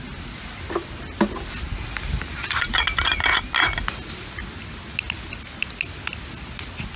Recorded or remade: recorded